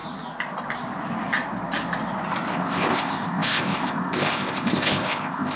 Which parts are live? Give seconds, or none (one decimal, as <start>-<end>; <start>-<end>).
0.0-2.5